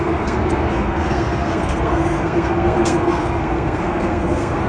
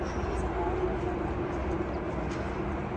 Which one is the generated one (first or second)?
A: first